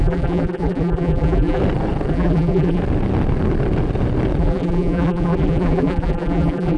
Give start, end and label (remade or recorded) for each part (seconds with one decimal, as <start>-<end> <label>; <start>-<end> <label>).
0.0-1.6 remade; 1.6-2.1 recorded; 2.1-2.8 remade; 2.8-4.4 recorded; 4.4-6.8 remade